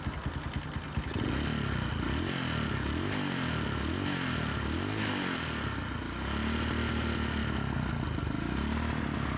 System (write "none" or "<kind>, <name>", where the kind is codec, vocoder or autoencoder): none